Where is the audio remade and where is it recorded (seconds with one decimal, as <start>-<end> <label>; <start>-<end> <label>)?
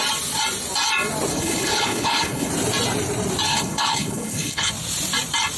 0.0-1.3 recorded; 1.3-2.5 remade; 2.5-3.5 recorded; 3.5-4.7 remade; 4.7-5.6 recorded